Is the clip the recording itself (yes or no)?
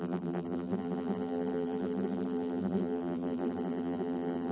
no